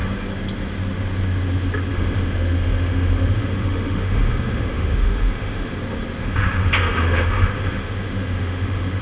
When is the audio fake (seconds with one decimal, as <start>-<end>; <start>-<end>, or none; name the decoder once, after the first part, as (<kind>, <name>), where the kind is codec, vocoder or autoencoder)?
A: 1.9-5.8 (autoencoder, DAC-VAE); 6.2-9.0